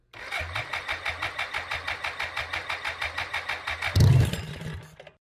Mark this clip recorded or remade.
recorded